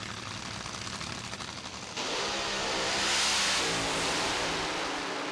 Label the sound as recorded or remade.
recorded